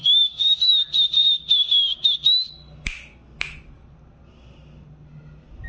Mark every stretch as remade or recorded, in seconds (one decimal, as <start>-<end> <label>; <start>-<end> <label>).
0.0-0.7 remade; 0.7-5.7 recorded